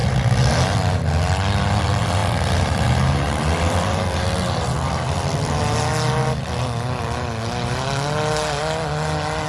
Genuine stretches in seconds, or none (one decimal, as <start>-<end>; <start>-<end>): 0.0-9.5